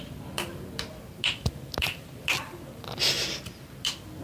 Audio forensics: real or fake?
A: real